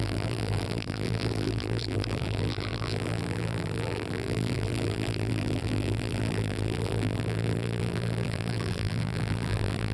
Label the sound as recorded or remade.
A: remade